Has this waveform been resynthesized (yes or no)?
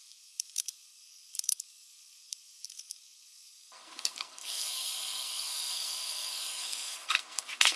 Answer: yes